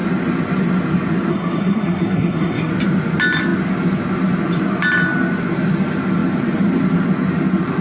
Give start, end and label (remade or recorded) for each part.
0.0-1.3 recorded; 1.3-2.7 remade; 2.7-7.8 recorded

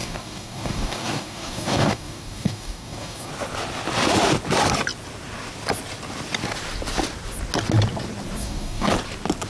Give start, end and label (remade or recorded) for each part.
0.0-3.3 remade; 3.3-8.4 recorded; 8.4-8.9 remade; 8.9-9.5 recorded